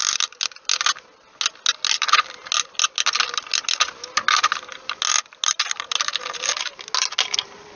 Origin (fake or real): real